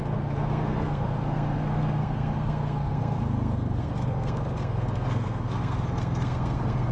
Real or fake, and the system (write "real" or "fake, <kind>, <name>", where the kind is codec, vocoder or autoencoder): fake, codec, SNAC